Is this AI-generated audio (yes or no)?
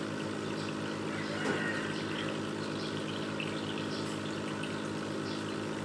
no